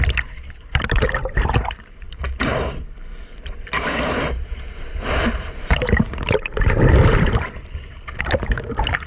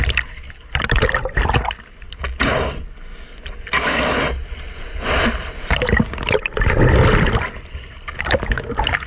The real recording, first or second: second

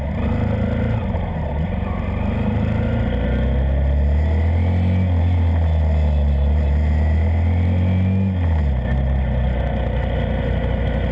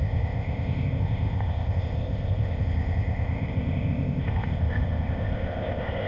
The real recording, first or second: first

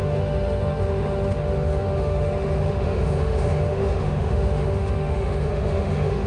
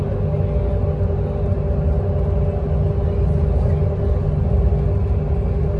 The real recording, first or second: second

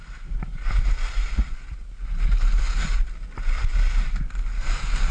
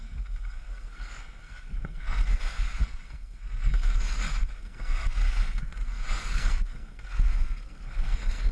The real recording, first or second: first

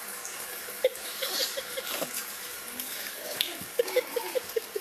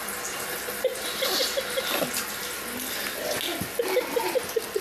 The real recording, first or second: second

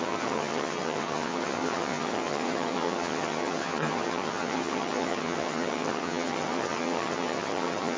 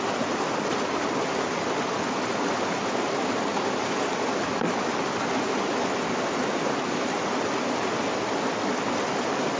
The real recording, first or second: second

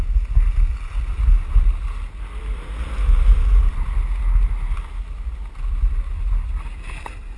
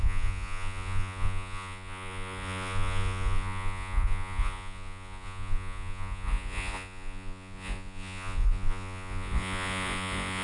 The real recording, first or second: first